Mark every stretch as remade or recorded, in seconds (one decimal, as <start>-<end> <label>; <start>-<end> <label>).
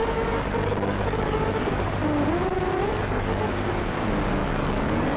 0.0-1.9 remade; 1.9-2.9 recorded; 2.9-3.5 remade; 3.5-4.4 recorded; 4.4-5.2 remade